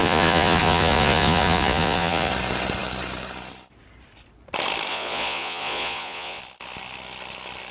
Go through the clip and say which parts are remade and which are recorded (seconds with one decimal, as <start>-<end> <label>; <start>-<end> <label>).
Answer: 0.0-2.3 remade; 2.3-4.9 recorded; 4.9-6.4 remade; 6.4-7.7 recorded